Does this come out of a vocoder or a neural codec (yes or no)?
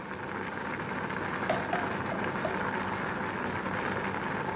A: no